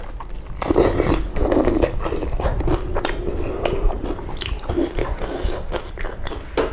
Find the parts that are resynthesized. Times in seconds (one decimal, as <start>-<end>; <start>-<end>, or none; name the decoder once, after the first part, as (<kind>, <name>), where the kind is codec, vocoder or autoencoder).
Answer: 1.3-2.0 (codec, DAC); 5.0-5.8